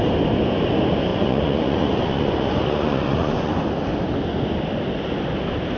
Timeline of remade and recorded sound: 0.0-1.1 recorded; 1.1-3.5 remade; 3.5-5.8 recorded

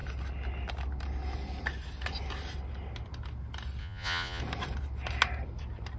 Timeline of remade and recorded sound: 0.0-3.8 recorded; 3.8-4.4 remade; 4.4-6.0 recorded

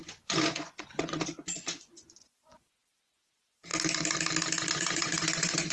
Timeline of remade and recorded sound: 0.0-3.7 remade; 3.7-4.7 recorded; 4.7-5.7 remade

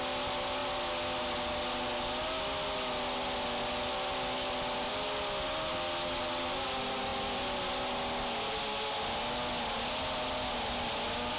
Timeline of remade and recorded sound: 0.0-11.4 recorded